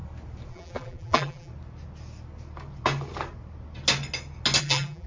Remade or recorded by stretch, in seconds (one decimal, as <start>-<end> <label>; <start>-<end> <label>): 0.0-0.5 recorded; 0.5-1.5 remade; 1.5-4.6 recorded; 4.6-5.1 remade